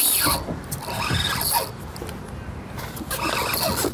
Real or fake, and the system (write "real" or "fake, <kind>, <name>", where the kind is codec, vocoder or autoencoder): real